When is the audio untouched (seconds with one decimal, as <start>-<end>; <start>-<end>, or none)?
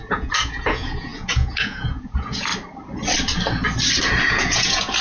2.5-4.3